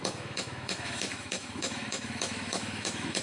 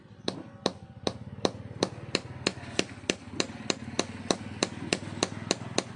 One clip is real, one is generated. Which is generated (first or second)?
first